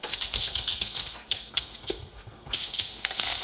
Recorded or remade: remade